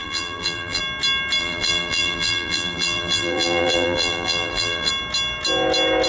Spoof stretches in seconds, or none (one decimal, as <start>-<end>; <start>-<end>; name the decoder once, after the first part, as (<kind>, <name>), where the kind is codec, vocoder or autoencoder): 0.0-0.8 (vocoder, BigVGAN v2); 1.4-4.9